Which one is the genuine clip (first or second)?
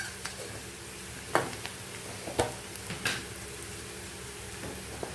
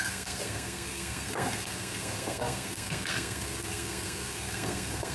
first